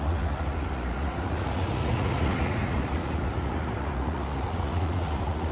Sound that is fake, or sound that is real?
fake